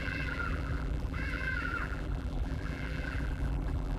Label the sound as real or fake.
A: fake